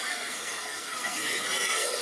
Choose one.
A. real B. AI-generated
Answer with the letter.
B